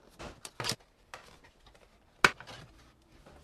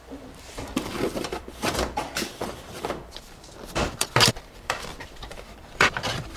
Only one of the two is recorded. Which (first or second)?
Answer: first